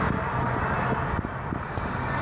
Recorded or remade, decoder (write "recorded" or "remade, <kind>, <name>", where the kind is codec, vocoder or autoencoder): recorded